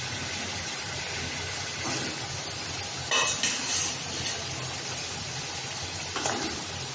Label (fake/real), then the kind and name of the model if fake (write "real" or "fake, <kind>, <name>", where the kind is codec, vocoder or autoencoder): real